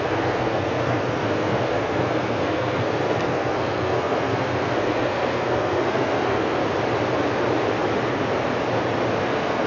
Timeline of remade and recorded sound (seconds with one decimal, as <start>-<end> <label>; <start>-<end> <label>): 0.0-6.6 remade; 6.6-9.2 recorded; 9.2-9.7 remade